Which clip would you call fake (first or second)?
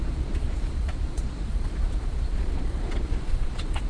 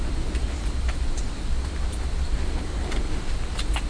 first